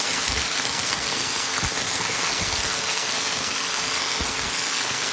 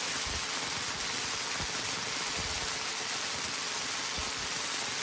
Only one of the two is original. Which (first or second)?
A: second